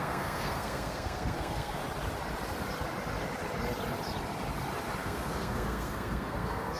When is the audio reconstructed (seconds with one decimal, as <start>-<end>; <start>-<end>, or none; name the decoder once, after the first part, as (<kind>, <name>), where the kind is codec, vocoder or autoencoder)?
0.0-1.8 (codec, SNAC); 5.0-6.8